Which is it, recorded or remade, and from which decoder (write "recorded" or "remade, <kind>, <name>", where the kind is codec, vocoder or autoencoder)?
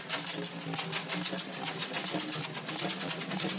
recorded